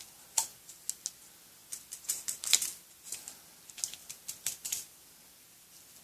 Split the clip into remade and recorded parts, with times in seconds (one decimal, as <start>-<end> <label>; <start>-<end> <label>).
0.0-6.0 recorded